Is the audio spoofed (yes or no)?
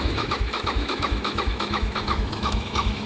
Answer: yes